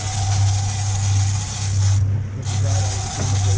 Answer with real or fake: real